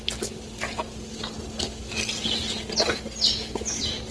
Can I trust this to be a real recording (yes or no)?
yes